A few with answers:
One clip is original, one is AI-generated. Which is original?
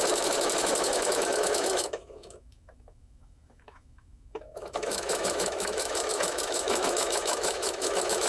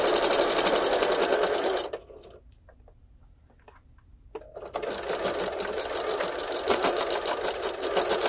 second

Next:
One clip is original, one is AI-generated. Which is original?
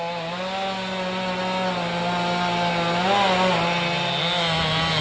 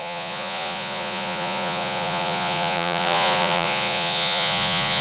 first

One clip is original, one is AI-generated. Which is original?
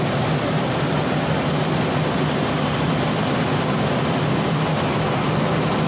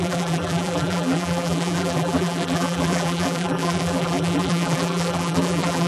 first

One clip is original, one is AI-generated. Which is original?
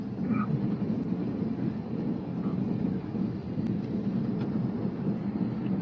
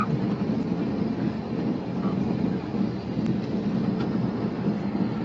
second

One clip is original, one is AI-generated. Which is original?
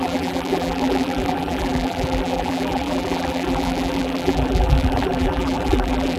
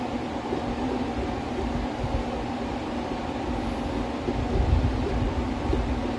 second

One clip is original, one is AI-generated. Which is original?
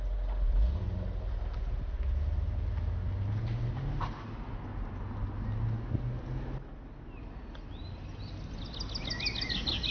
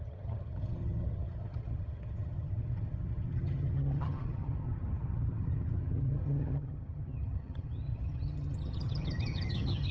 first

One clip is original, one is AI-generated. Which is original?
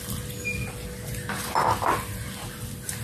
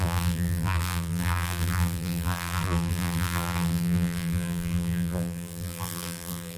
first